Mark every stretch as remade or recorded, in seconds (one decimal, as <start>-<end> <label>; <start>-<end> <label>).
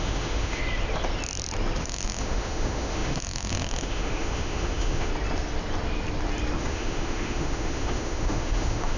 0.0-0.6 remade; 0.6-1.8 recorded; 1.8-5.1 remade; 5.1-6.6 recorded; 6.6-9.0 remade